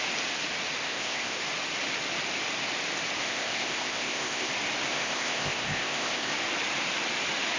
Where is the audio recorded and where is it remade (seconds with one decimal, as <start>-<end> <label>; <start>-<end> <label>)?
0.0-0.8 recorded; 0.8-1.4 remade; 1.4-3.2 recorded; 3.2-4.5 remade; 4.5-4.9 recorded; 4.9-6.3 remade; 6.3-7.6 recorded